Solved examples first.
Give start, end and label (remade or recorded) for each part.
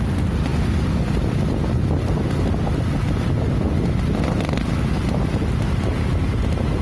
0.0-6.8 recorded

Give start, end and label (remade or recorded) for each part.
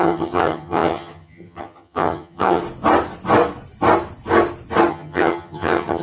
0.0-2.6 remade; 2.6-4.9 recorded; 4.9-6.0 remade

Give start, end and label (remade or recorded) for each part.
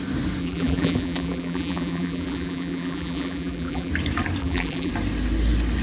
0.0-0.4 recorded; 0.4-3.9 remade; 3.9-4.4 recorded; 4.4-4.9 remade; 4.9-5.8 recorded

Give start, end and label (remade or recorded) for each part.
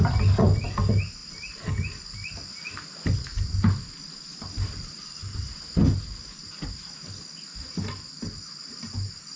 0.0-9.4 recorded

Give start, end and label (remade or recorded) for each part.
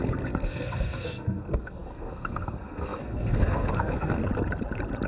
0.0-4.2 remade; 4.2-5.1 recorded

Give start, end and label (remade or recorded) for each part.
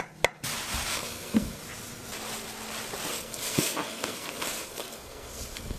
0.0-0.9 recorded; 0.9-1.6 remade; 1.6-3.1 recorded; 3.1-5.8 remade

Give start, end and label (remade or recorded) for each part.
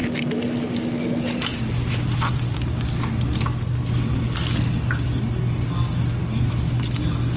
0.0-7.4 recorded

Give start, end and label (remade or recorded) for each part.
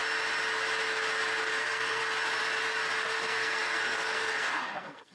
0.0-1.4 recorded; 1.4-2.0 remade; 2.0-3.0 recorded; 3.0-5.1 remade